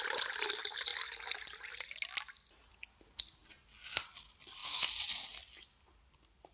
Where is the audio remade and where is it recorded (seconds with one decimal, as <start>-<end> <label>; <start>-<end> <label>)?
0.0-0.9 remade; 0.9-2.7 recorded; 2.7-3.4 remade; 3.4-3.9 recorded; 3.9-4.6 remade; 4.6-6.1 recorded; 6.1-6.5 remade